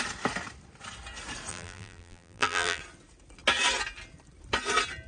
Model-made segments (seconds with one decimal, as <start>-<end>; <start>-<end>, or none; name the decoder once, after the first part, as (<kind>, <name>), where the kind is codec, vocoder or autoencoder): 1.5-2.8 (vocoder, BigVGAN v2)